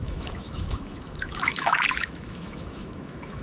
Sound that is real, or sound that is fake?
fake